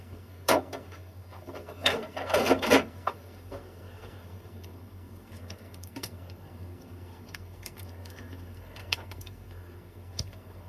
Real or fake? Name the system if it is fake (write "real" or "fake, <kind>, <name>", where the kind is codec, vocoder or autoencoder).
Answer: fake, codec, SNAC